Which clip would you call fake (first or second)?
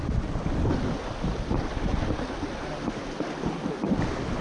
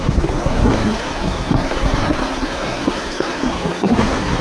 second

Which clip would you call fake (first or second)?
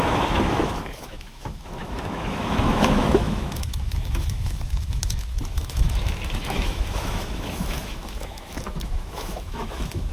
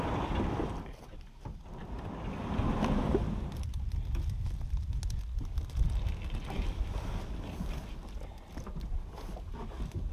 first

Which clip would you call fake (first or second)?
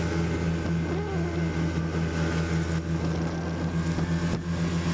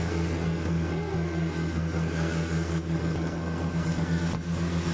second